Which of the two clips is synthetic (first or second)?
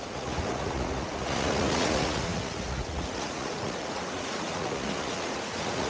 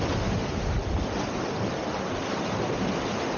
first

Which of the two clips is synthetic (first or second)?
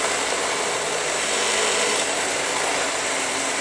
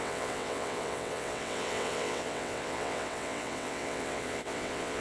second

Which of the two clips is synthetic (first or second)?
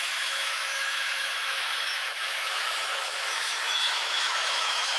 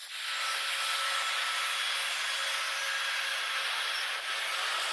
first